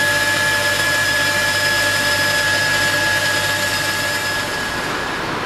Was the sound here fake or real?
real